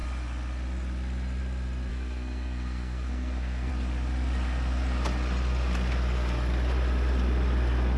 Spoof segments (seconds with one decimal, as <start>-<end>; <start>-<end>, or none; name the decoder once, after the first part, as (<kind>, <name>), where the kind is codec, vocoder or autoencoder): 1.9-3.7 (codec, SNAC)